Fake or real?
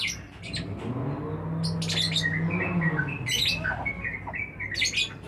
real